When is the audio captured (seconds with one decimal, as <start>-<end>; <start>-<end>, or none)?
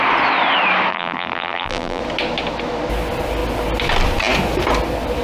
0.0-0.9; 2.0-5.2